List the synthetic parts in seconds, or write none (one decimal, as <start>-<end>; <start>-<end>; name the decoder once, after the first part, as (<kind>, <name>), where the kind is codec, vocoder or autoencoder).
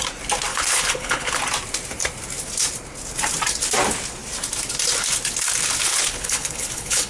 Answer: 0.5-1.4 (codec, HILCodec); 5.9-7.1